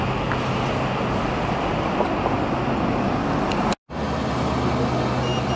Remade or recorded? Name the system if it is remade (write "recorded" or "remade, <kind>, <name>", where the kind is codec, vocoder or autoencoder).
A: recorded